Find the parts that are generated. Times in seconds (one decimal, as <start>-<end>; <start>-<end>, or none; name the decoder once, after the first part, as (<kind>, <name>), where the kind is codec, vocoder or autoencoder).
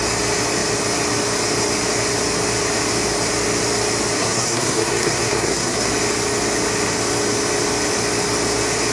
4.2-5.9 (codec, SNAC)